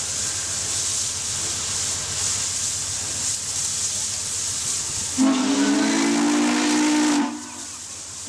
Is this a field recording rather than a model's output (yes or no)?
yes